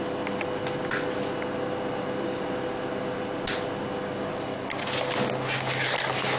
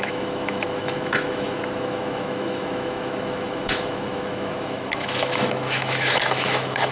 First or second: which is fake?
second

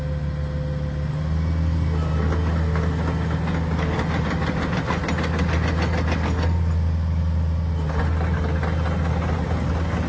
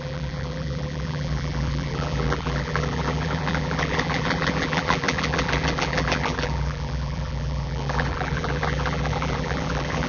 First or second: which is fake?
second